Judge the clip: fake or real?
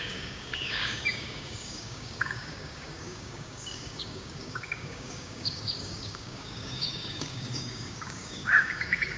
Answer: fake